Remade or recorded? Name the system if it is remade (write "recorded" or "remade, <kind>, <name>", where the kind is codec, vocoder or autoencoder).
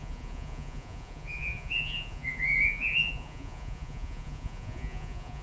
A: remade, vocoder, Vocos